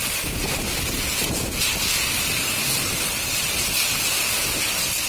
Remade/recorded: recorded